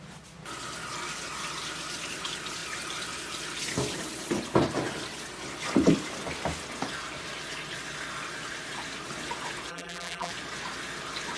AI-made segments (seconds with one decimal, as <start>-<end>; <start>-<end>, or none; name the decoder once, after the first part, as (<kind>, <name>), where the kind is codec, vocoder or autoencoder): 9.7-10.3 (vocoder, BigVGAN v2)